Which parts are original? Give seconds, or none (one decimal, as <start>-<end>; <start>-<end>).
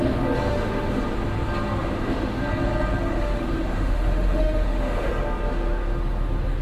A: 0.0-0.5; 1.0-1.8; 2.4-3.1; 5.1-6.6